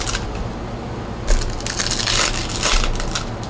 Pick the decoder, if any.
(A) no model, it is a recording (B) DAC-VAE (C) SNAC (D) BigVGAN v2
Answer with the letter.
A